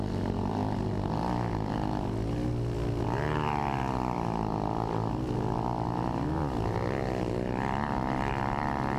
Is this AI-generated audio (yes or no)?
no